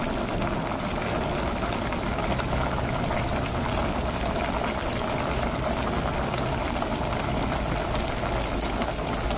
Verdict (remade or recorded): recorded